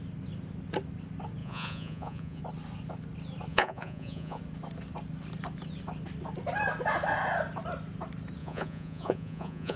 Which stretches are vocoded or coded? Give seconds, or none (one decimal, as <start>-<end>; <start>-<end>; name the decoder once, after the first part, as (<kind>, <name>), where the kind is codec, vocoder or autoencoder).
1.4-2.4 (vocoder, Vocos); 3.5-4.4; 8.4-9.8

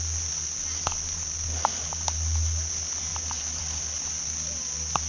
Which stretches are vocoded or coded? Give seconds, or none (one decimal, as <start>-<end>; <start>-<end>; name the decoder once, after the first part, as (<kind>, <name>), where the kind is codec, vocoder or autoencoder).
none

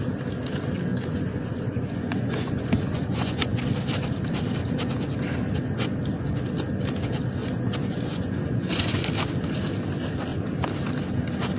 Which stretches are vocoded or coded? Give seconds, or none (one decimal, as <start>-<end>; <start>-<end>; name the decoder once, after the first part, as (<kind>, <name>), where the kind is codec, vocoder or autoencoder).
0.9-3.6 (vocoder, Vocos); 7.4-9.1

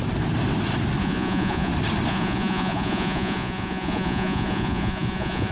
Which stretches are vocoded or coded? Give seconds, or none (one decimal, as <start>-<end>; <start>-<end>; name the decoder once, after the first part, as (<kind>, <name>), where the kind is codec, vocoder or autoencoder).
1.0-1.7 (vocoder, Vocos); 2.1-5.5

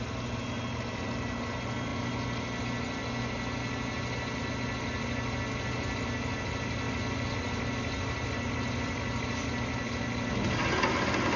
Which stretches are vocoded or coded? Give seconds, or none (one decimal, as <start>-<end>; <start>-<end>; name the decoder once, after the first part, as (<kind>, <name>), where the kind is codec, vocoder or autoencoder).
none

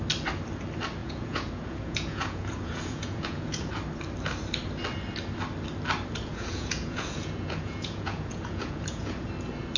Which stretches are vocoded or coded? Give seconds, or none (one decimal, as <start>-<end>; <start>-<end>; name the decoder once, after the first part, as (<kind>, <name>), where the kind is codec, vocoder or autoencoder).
1.0-3.7 (vocoder, Vocos); 6.3-9.3

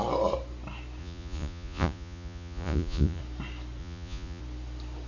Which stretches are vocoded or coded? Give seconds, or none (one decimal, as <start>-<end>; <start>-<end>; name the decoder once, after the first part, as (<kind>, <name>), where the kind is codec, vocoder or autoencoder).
1.0-3.2 (vocoder, Vocos); 3.8-4.4